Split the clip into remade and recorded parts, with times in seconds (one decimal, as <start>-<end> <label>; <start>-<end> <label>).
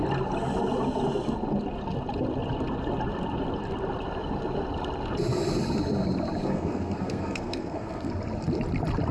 0.0-6.4 recorded; 6.4-8.1 remade; 8.1-9.1 recorded